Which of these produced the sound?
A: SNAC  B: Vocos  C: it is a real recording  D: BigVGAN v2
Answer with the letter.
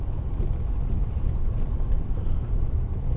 C